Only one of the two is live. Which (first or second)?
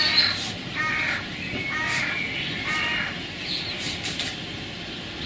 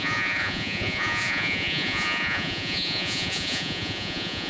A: first